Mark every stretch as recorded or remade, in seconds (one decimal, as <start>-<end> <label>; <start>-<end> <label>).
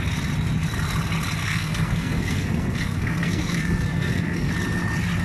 0.0-1.4 recorded; 1.4-4.5 remade; 4.5-5.2 recorded